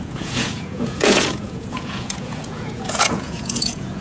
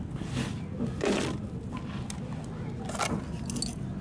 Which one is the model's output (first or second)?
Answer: first